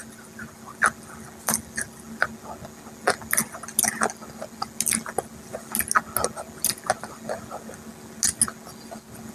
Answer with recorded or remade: recorded